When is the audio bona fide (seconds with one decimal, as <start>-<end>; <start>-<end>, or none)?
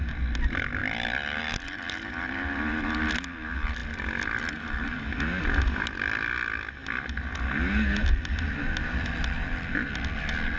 0.0-10.6